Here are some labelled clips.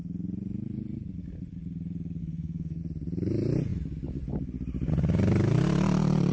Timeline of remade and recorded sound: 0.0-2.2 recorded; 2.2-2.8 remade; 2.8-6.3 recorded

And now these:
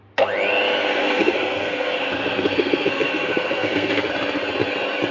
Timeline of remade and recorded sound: 0.0-1.0 recorded; 1.0-4.1 remade; 4.1-5.1 recorded

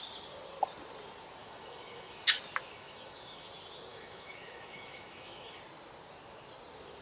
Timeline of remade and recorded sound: 0.0-1.4 recorded; 1.4-2.3 remade; 2.3-2.7 recorded; 2.7-3.5 remade; 3.5-3.9 recorded; 3.9-5.6 remade; 5.6-7.0 recorded

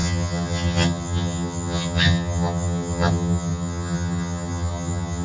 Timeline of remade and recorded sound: 0.0-5.2 remade

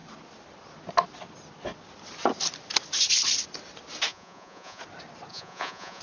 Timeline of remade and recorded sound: 0.0-4.1 recorded; 4.1-4.8 remade; 4.8-5.3 recorded; 5.3-6.0 remade

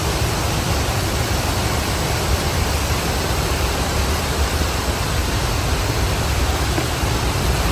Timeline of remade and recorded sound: 0.0-5.2 remade; 5.2-6.1 recorded; 6.1-7.7 remade

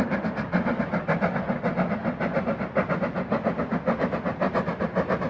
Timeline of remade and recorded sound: 0.0-5.3 recorded